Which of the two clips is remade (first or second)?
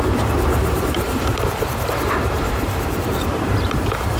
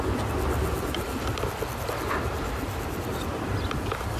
first